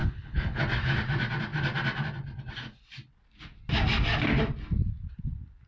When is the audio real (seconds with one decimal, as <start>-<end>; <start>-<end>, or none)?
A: 0.6-5.7